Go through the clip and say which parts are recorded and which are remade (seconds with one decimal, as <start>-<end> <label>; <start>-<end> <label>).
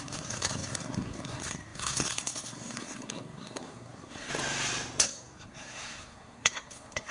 0.0-4.3 remade; 4.3-5.0 recorded; 5.0-7.1 remade